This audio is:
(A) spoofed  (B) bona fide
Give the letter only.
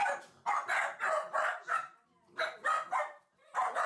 B